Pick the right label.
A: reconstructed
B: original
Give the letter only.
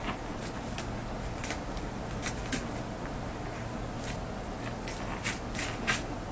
B